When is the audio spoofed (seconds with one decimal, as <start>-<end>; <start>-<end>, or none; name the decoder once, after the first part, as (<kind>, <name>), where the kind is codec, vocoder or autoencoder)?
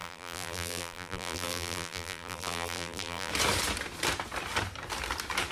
0.0-3.3 (vocoder, BigVGAN v2)